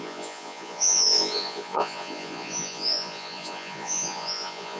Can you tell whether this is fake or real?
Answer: fake